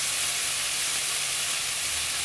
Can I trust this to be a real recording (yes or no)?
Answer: yes